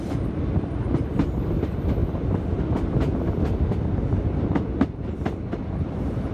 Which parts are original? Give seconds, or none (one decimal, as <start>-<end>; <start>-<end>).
0.0-6.3